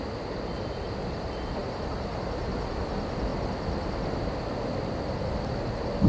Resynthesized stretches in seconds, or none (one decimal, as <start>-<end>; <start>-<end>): none